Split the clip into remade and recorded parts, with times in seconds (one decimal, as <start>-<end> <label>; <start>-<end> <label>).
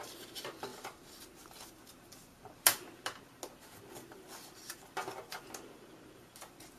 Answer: 0.0-6.8 recorded